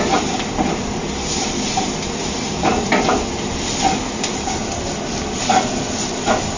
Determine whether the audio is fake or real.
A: real